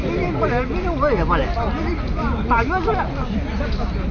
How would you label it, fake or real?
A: real